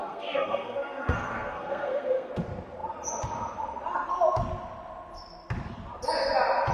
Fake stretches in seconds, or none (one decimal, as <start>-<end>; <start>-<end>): 0.0-2.3